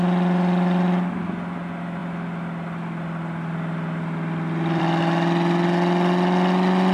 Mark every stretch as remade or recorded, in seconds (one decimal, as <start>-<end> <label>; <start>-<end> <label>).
0.0-6.9 recorded